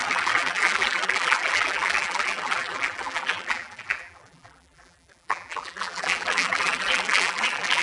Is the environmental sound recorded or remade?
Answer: remade